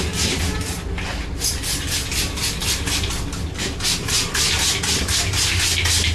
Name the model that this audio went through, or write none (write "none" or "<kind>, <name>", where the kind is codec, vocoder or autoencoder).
none